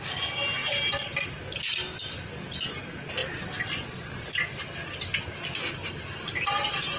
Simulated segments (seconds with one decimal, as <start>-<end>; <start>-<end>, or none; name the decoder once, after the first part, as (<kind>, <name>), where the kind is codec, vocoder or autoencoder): 0.6-2.5 (vocoder, BigVGAN v2); 3.2-5.2